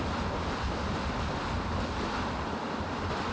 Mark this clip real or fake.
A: real